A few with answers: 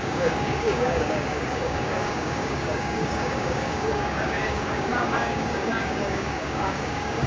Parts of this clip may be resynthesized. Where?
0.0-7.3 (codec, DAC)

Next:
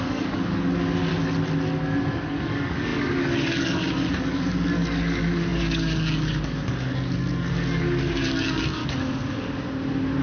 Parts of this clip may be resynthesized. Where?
0.0-1.1 (codec, DAC); 2.4-8.8